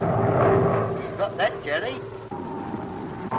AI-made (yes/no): no